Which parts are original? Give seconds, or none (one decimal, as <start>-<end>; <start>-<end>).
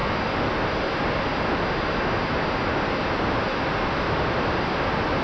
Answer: 0.0-0.7; 1.3-3.0